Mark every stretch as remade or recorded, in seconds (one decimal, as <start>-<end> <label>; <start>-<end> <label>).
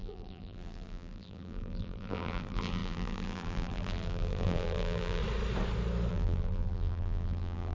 0.0-5.2 remade; 5.2-6.1 recorded; 6.1-7.7 remade